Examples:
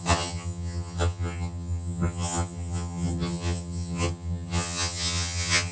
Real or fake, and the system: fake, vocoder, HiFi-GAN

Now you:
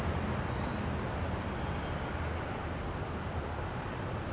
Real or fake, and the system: real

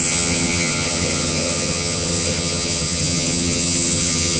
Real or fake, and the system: fake, vocoder, HiFi-GAN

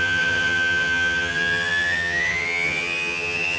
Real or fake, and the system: fake, vocoder, HiFi-GAN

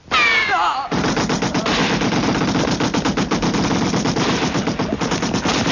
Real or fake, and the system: real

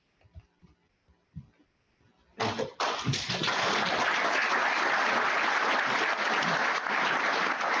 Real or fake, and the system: real